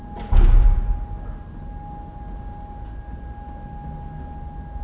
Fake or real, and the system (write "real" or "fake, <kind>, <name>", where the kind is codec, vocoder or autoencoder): real